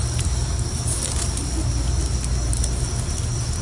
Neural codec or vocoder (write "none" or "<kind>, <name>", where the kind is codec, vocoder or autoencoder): none